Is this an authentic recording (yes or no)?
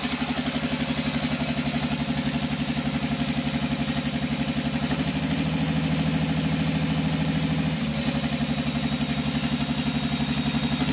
yes